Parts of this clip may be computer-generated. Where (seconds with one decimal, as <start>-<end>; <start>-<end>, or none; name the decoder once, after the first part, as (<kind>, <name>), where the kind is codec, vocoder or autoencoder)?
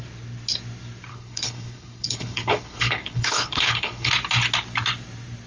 1.1-4.1 (codec, HILCodec)